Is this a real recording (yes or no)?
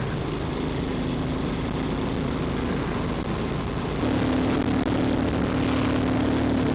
yes